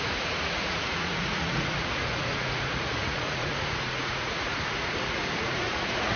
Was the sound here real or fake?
fake